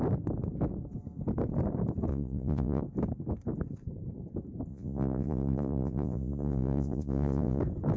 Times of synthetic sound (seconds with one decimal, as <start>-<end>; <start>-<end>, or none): 2.1-2.8; 4.7-7.6